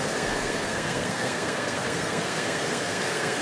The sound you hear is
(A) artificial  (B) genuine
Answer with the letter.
A